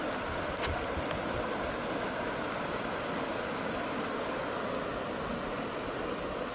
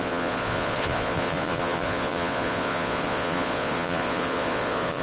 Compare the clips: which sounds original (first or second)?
first